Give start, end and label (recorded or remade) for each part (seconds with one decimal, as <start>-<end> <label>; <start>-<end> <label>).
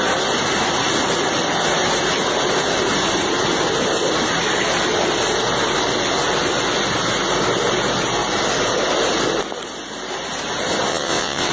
0.0-10.9 recorded; 10.9-11.5 remade